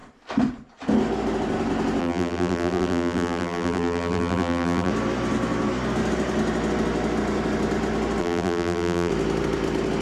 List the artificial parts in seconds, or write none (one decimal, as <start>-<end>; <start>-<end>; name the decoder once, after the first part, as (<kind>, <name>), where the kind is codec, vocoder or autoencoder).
2.0-4.9 (vocoder, BigVGAN v2); 8.2-9.1